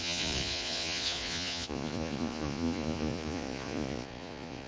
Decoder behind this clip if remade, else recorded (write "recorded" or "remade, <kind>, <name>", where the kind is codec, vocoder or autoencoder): remade, vocoder, Vocos